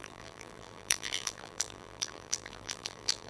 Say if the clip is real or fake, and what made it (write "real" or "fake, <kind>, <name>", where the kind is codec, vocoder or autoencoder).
fake, vocoder, BigVGAN v2